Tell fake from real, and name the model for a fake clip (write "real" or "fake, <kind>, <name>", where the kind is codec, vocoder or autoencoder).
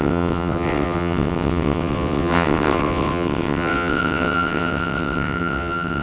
fake, vocoder, WaveNeXt